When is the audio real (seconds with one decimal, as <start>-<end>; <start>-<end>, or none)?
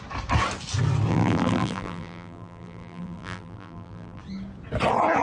0.0-1.1; 4.2-5.2